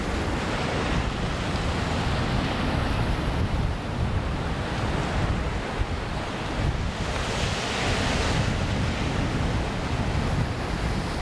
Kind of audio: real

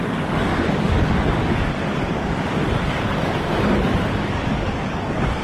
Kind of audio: fake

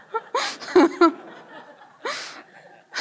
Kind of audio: real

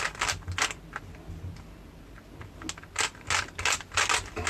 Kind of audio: real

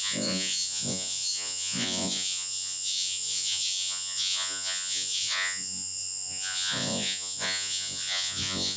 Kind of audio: fake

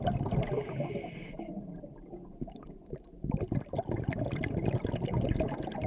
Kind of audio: real